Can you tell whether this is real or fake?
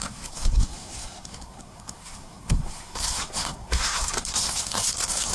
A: fake